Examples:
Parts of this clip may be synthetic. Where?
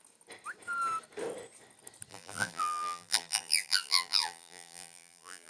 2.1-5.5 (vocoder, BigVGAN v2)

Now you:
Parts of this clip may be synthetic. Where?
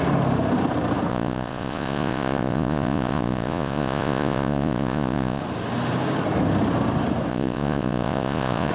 1.1-5.4 (vocoder, Vocos); 7.3-8.7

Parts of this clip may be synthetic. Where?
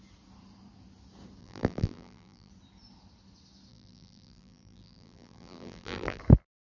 1.4-2.5 (vocoder, BigVGAN v2); 3.7-6.2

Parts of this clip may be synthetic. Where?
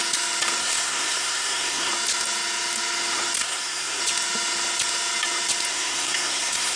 0.6-1.9 (codec, SNAC); 3.4-4.0; 5.7-6.8